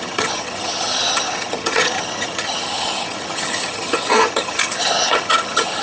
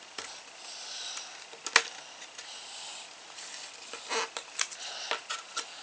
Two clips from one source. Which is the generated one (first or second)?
first